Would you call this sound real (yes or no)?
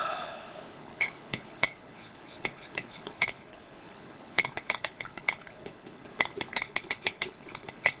no